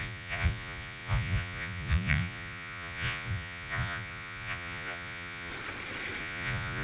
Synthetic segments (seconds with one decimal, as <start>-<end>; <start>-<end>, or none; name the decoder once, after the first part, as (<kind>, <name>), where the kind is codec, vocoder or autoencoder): 0.0-5.5 (vocoder, Vocos); 6.2-6.8